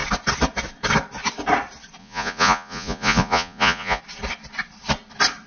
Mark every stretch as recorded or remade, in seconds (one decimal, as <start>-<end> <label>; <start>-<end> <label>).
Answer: 0.0-2.0 recorded; 2.0-4.0 remade; 4.0-5.5 recorded